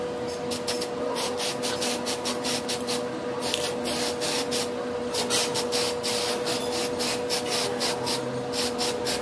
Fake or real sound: real